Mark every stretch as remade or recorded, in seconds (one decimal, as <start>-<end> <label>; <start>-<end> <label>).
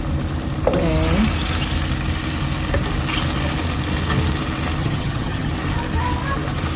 0.0-4.8 recorded; 4.8-5.5 remade; 5.5-6.8 recorded